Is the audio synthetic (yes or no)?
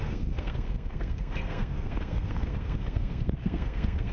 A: yes